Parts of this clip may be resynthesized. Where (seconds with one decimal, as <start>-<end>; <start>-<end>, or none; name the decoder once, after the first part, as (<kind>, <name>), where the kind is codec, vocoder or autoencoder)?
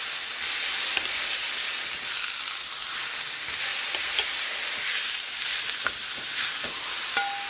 1.4-2.9 (vocoder, BigVGAN v2)